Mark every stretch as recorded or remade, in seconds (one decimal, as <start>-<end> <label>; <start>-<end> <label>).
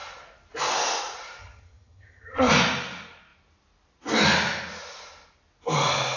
0.0-1.4 recorded; 1.4-2.5 remade; 2.5-6.2 recorded